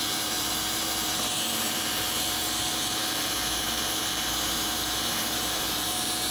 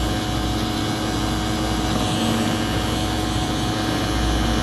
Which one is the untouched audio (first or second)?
second